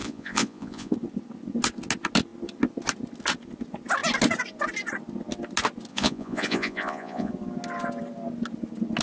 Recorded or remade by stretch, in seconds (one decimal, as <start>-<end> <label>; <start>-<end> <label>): 0.0-0.9 remade; 0.9-5.9 recorded; 5.9-7.3 remade; 7.3-9.0 recorded